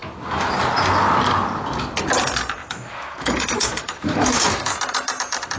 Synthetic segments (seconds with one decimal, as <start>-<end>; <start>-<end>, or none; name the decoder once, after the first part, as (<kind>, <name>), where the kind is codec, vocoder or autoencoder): 0.0-0.5 (autoencoder, DAC-VAE); 2.6-4.7